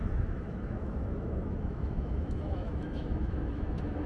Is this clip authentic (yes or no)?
no